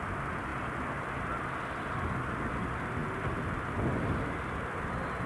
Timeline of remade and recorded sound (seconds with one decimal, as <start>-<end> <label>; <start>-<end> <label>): 0.0-5.3 recorded